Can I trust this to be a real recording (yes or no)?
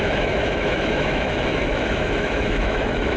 no